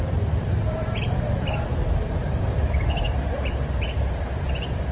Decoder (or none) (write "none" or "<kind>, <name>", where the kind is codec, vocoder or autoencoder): vocoder, BigVGAN v2